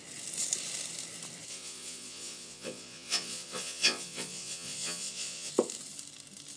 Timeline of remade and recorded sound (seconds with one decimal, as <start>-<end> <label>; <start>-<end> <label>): 0.0-1.5 recorded; 1.5-5.5 remade; 5.5-6.6 recorded